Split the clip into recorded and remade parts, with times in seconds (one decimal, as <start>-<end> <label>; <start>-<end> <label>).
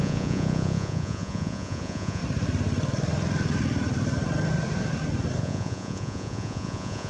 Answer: 0.0-2.2 remade; 2.2-5.4 recorded; 5.4-7.1 remade